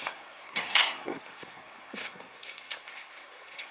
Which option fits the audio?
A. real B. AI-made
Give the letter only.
B